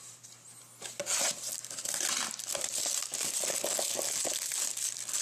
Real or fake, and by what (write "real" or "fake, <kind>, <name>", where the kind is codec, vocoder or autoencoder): real